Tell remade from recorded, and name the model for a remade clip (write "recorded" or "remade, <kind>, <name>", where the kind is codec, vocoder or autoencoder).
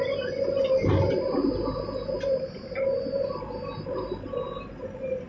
recorded